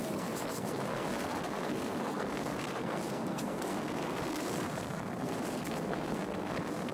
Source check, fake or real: fake